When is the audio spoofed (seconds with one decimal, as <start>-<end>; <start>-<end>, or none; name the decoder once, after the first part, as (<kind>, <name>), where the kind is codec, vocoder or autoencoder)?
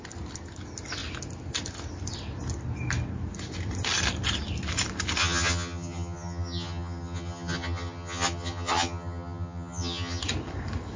5.2-10.2 (vocoder, HiFi-GAN)